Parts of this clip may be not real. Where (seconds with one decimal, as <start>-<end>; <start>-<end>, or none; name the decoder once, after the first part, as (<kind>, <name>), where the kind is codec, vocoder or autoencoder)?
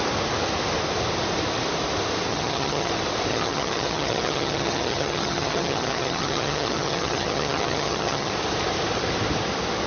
2.3-2.9 (vocoder, HiFi-GAN); 3.3-8.3